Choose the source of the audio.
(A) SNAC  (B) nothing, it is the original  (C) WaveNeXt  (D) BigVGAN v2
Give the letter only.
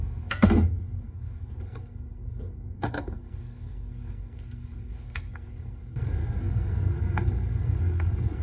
A